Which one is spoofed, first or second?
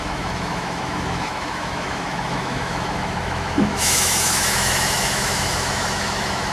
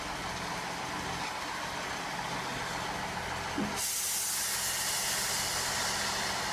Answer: first